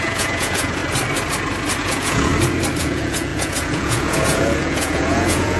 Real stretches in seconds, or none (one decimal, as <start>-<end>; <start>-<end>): 0.8-1.8; 2.3-2.8